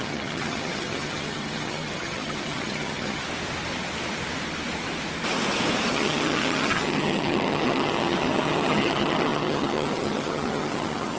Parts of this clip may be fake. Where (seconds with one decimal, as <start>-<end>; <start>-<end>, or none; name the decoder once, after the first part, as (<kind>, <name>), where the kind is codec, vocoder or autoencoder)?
0.0-3.2 (vocoder, HiFi-GAN); 5.9-11.2

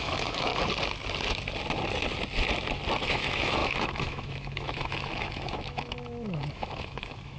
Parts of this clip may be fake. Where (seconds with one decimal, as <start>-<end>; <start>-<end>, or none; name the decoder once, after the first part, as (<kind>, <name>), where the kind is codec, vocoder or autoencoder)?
0.0-0.5 (autoencoder, DAC-VAE); 3.1-7.4

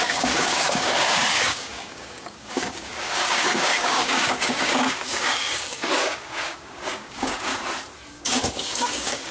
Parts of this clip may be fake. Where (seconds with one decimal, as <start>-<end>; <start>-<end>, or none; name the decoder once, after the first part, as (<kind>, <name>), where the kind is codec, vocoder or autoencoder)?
0.0-7.5 (codec, DAC); 8.1-9.3

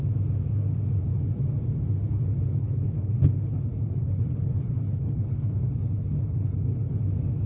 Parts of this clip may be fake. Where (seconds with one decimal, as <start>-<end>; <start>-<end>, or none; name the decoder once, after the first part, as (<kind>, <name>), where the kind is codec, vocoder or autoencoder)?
2.6-6.9 (codec, HILCodec)

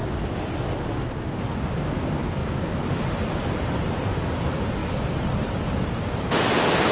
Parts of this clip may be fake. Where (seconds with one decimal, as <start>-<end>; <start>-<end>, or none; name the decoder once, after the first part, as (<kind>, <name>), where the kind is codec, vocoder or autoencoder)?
none